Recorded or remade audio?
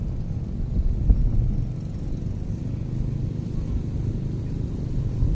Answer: recorded